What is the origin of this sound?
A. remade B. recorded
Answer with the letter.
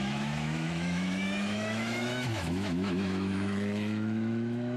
A